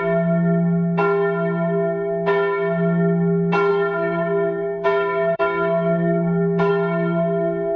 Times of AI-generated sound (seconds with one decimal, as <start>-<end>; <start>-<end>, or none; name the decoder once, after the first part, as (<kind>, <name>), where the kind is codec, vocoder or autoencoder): 3.7-6.7 (codec, DAC)